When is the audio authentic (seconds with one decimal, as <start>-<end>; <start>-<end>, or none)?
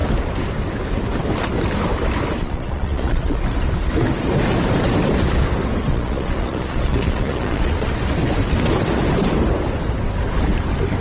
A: 0.0-2.4; 3.4-5.9; 7.9-11.0